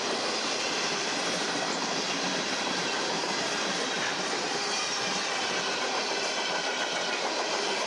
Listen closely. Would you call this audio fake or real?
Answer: fake